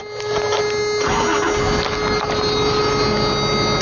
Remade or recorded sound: recorded